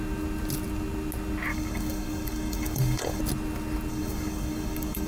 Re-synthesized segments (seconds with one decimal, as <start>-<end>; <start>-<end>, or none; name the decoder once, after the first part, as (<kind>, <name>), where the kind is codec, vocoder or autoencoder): 1.5-3.2 (codec, DAC); 3.9-5.1